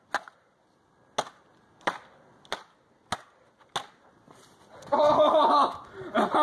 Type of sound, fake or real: real